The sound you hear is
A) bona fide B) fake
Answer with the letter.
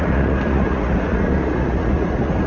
B